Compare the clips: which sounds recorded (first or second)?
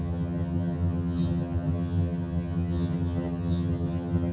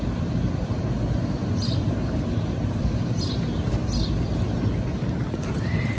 second